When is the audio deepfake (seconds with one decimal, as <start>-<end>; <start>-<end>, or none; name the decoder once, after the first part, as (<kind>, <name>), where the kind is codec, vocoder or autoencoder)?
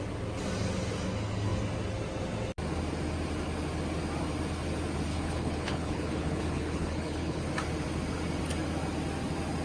5.1-7.5 (codec, HILCodec)